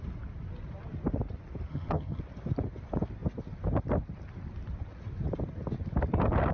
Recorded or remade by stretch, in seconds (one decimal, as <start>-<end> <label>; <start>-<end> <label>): 0.0-1.7 recorded; 1.7-2.2 remade; 2.2-6.5 recorded